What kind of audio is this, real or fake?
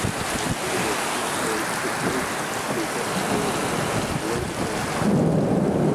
real